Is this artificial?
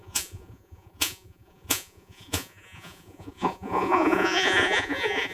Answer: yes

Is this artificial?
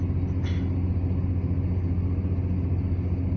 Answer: no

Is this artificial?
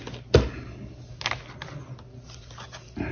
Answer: no